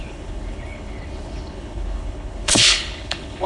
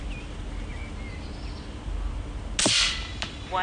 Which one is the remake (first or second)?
first